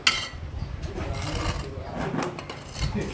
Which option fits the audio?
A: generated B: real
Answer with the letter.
B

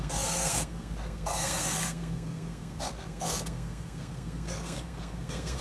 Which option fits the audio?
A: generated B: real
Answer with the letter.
A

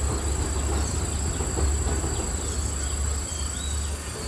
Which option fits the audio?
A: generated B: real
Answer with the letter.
B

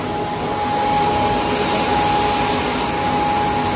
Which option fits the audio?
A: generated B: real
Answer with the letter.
B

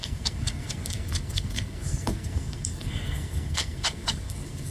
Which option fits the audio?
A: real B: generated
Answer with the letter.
B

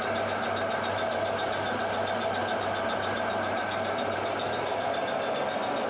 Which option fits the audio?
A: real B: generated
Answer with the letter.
A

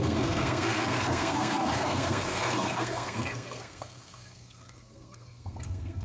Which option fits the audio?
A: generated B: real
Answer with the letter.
A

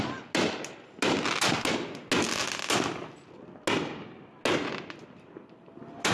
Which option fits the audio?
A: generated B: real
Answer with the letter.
B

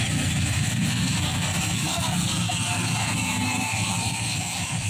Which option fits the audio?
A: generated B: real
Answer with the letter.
A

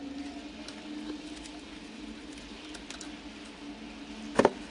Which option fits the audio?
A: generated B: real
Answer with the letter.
B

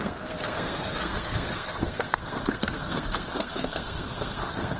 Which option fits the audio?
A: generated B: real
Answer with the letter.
A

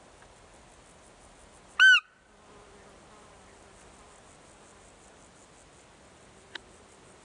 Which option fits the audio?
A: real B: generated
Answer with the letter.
A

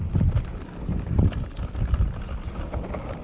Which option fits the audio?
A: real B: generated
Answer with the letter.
A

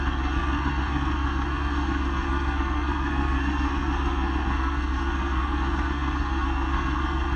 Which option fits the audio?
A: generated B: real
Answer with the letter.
A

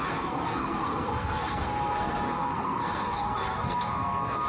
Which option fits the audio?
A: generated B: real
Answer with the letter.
A